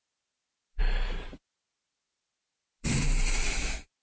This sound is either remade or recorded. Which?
recorded